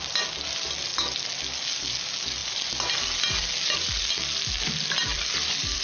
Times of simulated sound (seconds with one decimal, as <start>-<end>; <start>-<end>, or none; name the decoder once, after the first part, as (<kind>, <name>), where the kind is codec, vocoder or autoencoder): none